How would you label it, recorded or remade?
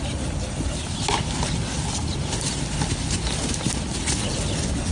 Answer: recorded